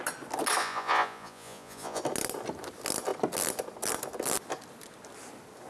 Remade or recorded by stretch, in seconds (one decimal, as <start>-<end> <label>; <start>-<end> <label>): 0.0-0.6 recorded; 0.6-2.0 remade; 2.0-5.7 recorded